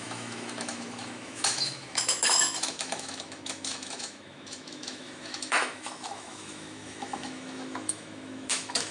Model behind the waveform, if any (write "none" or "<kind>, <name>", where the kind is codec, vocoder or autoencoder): autoencoder, DAC-VAE